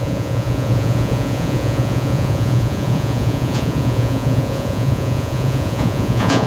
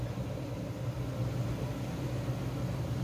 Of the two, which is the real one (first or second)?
second